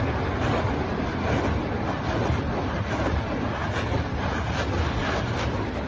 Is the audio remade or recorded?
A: recorded